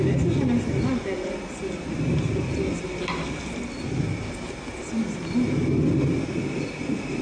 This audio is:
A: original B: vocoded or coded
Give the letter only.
A